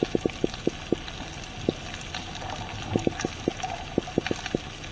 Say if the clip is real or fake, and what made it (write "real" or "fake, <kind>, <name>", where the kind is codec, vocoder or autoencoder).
real